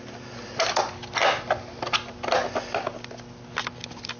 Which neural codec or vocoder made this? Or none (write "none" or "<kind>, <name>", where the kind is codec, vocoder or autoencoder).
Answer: none